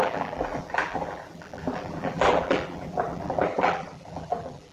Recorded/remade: remade